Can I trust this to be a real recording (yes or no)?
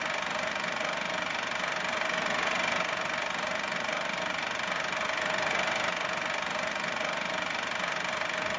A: yes